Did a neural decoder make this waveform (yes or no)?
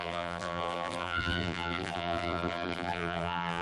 yes